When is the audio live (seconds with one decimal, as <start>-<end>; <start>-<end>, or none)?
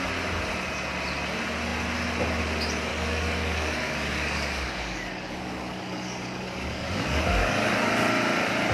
0.0-2.9; 7.9-8.7